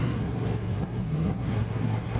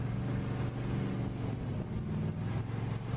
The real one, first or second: second